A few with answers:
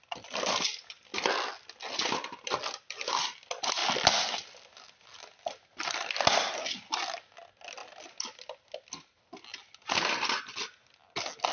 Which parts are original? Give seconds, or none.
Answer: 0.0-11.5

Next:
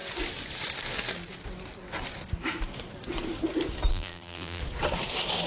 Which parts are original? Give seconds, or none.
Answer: 0.0-3.9; 4.6-5.5

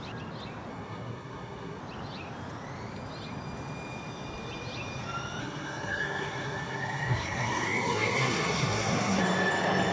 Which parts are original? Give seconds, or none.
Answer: 0.0-0.7; 1.8-5.4; 9.2-9.9

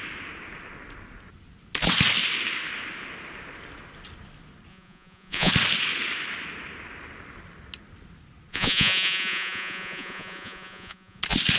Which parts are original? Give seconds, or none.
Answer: 0.0-4.7; 5.5-8.5; 11.2-11.6

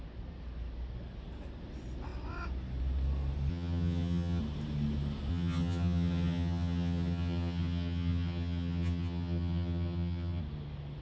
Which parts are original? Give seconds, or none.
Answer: 0.0-3.5; 4.4-5.3; 10.4-11.0

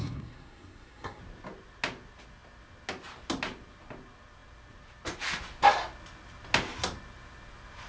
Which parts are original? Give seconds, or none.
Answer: 1.2-7.9